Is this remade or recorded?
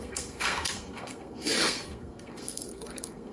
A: remade